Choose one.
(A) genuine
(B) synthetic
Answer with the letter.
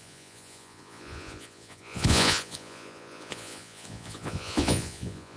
B